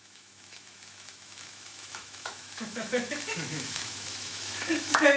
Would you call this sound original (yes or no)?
no